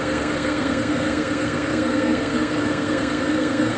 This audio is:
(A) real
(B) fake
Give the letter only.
B